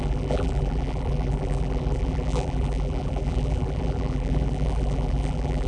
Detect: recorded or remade remade